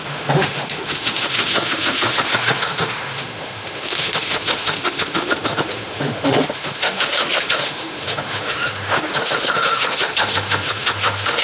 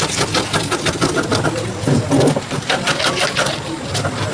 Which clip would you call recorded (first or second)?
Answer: second